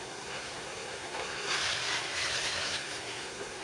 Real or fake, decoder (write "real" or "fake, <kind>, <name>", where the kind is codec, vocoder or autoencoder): fake, codec, SNAC